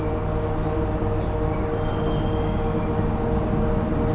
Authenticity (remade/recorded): recorded